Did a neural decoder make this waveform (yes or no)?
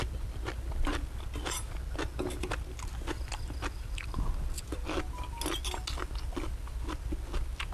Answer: no